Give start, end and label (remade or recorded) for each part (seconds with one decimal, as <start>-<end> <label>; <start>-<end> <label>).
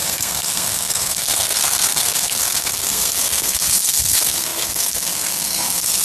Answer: 0.0-6.0 remade